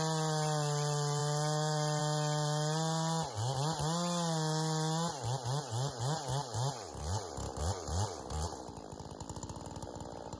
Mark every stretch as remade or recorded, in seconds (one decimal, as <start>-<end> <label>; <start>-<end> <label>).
0.0-10.4 recorded